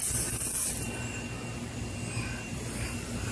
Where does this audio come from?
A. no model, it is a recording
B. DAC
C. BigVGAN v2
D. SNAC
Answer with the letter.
A